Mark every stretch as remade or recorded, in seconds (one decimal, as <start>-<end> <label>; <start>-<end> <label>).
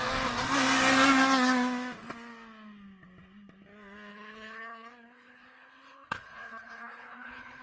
0.0-4.1 recorded; 4.1-7.6 remade